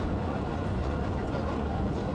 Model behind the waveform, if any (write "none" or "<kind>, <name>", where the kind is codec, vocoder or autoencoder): vocoder, Vocos